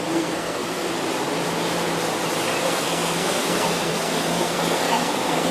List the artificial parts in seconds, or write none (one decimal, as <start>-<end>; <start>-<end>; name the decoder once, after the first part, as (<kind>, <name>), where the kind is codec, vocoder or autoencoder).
0.0-0.9 (codec, SNAC); 2.6-5.5